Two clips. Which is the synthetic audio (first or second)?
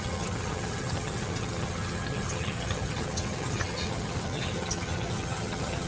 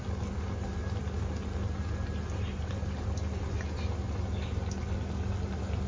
first